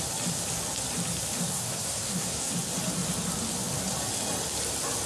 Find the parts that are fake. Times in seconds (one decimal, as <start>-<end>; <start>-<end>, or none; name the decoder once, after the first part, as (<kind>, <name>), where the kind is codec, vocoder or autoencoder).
1.5-2.5 (codec, SNAC)